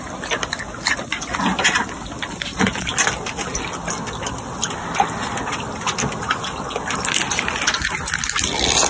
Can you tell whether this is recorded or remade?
recorded